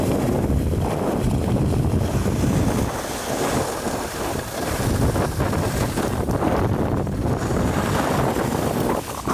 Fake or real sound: real